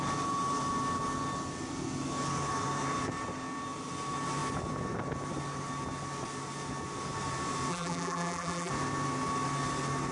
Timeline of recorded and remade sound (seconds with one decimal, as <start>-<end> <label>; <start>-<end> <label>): 0.0-7.7 recorded; 7.7-8.7 remade; 8.7-10.1 recorded